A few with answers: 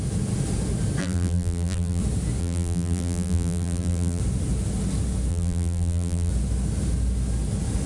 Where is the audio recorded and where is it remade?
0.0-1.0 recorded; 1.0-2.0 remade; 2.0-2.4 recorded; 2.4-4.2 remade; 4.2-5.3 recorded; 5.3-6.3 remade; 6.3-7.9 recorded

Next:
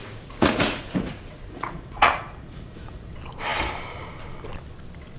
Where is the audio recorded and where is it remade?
0.0-3.1 remade; 3.1-5.2 recorded

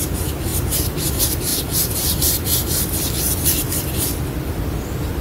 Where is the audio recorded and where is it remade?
0.0-0.5 remade; 0.5-1.0 recorded; 1.0-5.2 remade

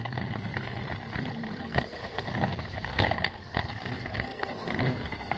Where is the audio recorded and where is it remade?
0.0-0.8 remade; 0.8-1.6 recorded; 1.6-5.4 remade

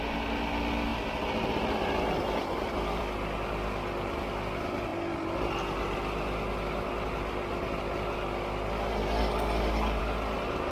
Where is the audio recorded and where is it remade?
0.0-10.7 recorded

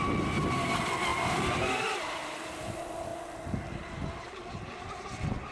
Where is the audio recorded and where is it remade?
0.0-1.1 recorded; 1.1-2.7 remade; 2.7-5.5 recorded

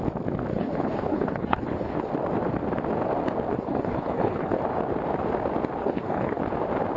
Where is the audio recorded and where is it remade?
0.0-0.5 recorded; 0.5-2.1 remade; 2.1-3.5 recorded; 3.5-4.6 remade; 4.6-5.8 recorded; 5.8-6.4 remade; 6.4-7.0 recorded

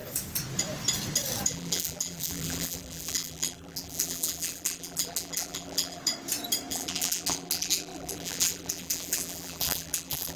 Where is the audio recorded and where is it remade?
0.0-1.5 recorded; 1.5-6.0 remade; 6.0-6.7 recorded; 6.7-10.4 remade